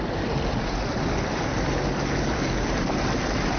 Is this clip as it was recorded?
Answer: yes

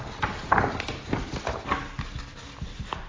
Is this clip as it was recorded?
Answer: yes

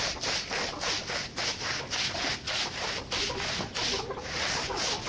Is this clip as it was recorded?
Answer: yes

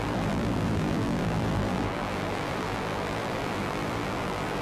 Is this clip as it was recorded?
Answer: no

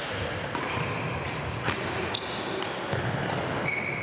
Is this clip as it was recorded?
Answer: yes